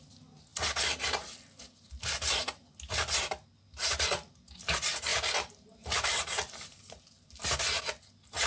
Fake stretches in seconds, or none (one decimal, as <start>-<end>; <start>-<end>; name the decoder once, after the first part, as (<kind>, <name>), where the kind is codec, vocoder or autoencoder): 5.1-7.8 (vocoder, BigVGAN v2)